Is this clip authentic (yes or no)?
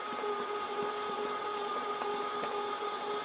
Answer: yes